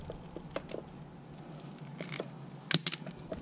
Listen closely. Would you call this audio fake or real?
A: real